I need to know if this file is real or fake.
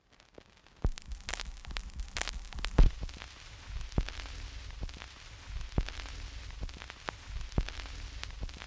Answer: real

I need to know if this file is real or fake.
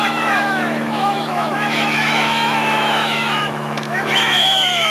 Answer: fake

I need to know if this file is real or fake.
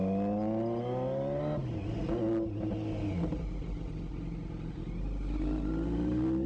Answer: real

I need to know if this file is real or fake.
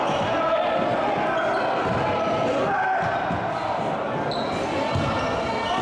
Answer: real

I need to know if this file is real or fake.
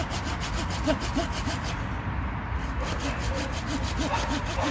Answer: real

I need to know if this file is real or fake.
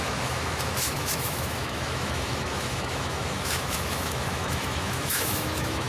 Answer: fake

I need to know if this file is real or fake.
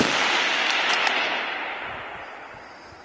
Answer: real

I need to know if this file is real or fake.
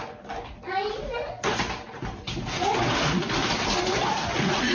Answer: real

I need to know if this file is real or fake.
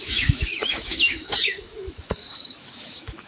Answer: fake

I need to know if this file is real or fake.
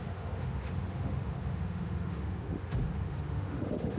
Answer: fake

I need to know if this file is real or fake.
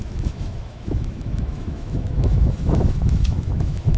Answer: fake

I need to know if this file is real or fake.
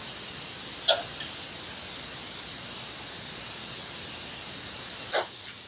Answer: real